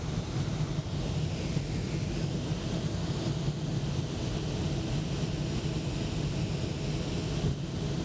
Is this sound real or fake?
real